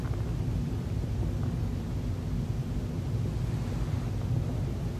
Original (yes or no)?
yes